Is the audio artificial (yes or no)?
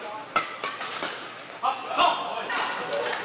no